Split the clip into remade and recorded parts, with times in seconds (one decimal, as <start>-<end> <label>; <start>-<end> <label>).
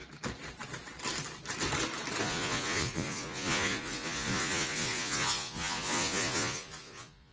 0.0-2.2 recorded; 2.2-7.3 remade